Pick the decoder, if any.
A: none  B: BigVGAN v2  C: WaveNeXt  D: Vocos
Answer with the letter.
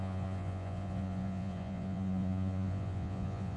D